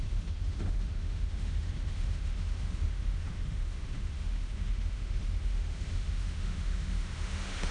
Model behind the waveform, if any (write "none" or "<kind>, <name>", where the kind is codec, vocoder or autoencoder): autoencoder, DAC-VAE